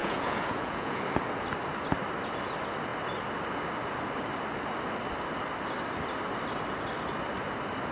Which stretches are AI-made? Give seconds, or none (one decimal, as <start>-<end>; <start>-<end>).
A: 0.0-1.0